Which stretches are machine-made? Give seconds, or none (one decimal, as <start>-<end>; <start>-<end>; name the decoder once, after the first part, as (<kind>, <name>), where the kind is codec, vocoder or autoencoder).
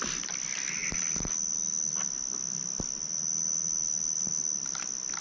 none